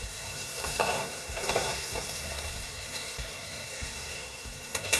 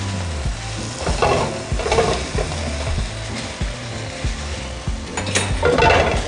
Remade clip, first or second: first